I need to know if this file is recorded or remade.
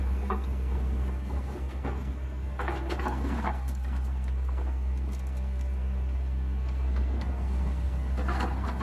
remade